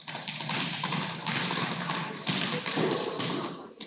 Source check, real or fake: real